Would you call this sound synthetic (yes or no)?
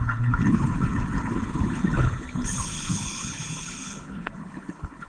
yes